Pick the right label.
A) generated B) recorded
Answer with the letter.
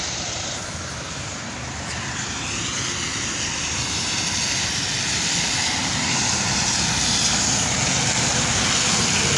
B